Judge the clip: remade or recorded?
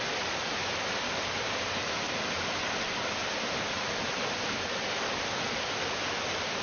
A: recorded